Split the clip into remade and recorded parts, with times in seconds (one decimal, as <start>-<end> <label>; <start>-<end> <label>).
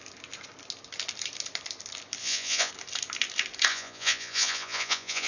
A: 0.0-2.2 recorded; 2.2-2.7 remade; 2.7-3.7 recorded; 3.7-5.3 remade